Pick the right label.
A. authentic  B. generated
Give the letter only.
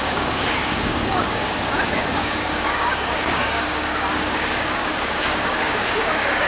B